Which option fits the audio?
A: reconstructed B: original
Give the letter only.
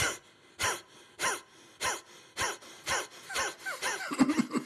B